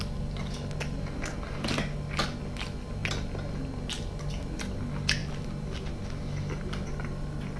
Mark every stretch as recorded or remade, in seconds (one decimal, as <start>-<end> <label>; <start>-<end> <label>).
0.0-7.6 recorded